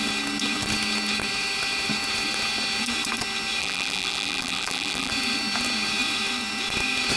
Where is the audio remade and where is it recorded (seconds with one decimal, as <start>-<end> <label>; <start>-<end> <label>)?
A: 0.0-3.6 recorded; 3.6-5.1 remade; 5.1-7.2 recorded